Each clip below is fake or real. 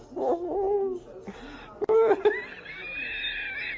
real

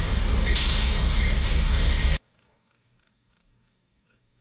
fake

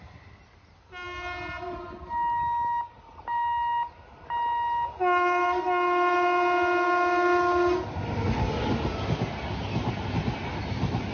real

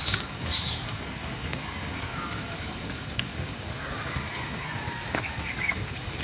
fake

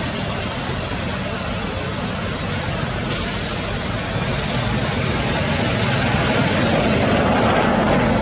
real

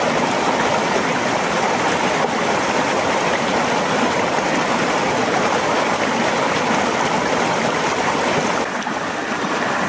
real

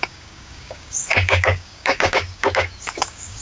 fake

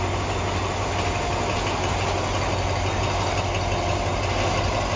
real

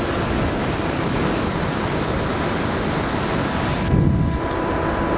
real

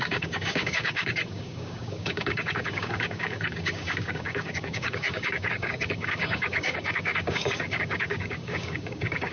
fake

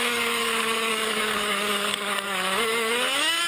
fake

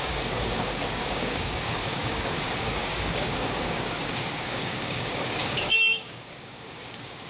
fake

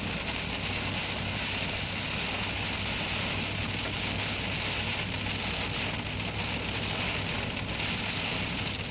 real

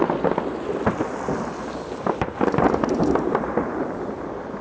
real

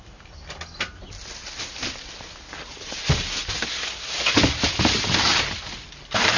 real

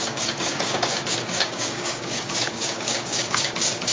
fake